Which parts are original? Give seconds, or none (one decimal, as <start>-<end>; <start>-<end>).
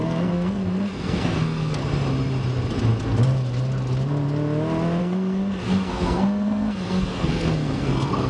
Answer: 1.8-5.0